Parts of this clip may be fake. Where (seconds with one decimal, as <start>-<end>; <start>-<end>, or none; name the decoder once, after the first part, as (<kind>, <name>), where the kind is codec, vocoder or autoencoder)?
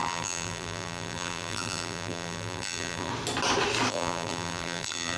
0.0-3.1 (vocoder, BigVGAN v2); 3.9-5.2